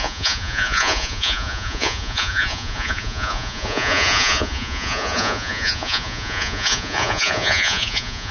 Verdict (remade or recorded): remade